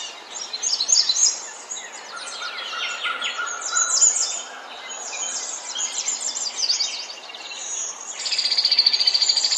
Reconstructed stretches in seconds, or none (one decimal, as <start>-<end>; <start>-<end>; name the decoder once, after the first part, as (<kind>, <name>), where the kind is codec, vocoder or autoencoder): 7.2-8.1 (vocoder, BigVGAN v2)